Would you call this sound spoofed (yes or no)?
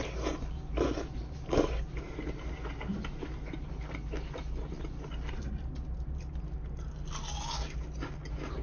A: no